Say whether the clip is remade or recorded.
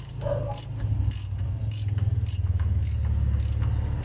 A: recorded